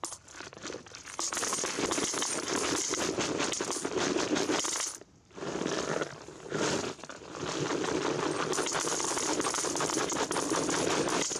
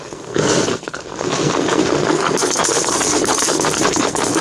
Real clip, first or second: first